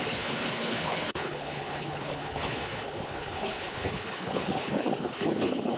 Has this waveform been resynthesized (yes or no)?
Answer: yes